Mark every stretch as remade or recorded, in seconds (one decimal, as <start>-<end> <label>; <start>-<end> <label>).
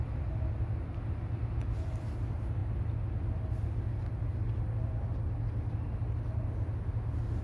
0.0-7.4 recorded